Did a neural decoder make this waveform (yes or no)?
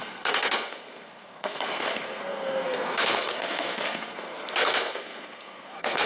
yes